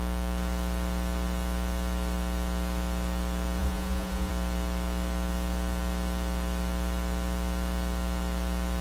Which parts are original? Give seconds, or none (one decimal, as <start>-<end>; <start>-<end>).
0.0-3.6; 4.3-8.8